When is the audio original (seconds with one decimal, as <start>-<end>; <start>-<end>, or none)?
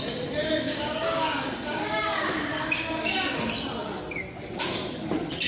0.0-0.4; 3.2-5.5